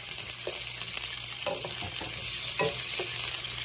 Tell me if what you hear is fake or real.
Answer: real